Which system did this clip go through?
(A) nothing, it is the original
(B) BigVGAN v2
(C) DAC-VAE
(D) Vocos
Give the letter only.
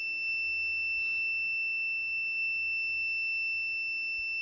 A